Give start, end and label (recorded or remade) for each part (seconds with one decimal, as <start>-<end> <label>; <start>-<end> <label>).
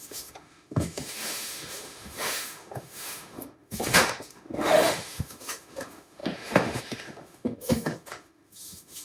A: 0.0-9.0 remade